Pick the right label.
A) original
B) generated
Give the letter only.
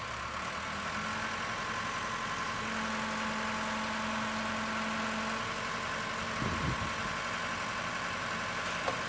A